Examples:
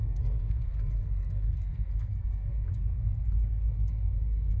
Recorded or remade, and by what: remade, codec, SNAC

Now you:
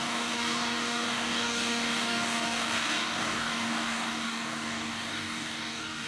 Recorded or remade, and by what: remade, codec, DAC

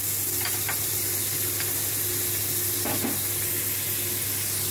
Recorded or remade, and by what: recorded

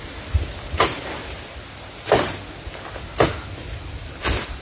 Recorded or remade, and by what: recorded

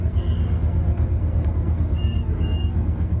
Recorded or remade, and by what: remade, codec, SNAC